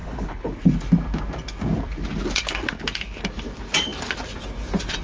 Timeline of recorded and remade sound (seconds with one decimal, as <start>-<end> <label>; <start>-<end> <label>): 0.0-0.6 remade; 0.6-5.0 recorded